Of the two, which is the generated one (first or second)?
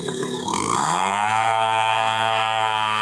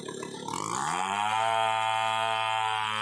first